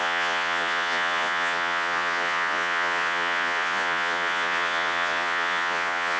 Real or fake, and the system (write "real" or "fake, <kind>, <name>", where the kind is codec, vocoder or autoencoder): fake, vocoder, Vocos